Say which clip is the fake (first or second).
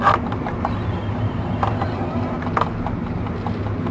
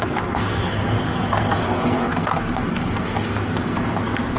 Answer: second